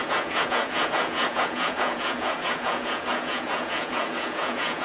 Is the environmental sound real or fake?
fake